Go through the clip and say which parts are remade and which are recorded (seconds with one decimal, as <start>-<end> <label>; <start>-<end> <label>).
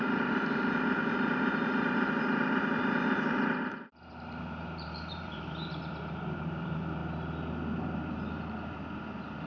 0.0-7.0 remade; 7.0-7.8 recorded; 7.8-9.5 remade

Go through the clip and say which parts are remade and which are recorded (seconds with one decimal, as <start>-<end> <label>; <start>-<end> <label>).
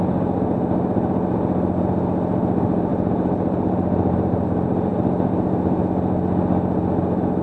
0.0-2.9 recorded; 2.9-4.5 remade; 4.5-7.4 recorded